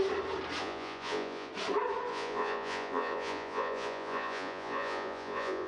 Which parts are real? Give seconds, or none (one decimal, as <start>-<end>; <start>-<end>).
0.0-0.6; 1.5-2.1